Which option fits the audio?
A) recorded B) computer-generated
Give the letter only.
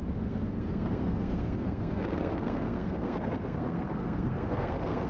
B